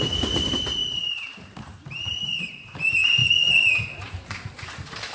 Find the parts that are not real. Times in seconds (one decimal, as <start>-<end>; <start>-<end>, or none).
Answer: 0.0-3.2; 3.8-5.1